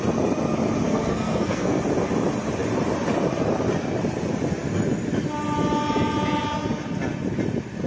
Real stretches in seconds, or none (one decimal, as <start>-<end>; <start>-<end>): 0.0-0.9; 1.8-7.9